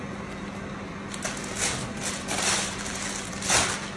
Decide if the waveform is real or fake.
real